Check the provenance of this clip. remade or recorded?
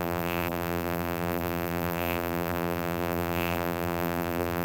remade